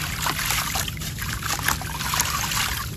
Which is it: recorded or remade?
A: recorded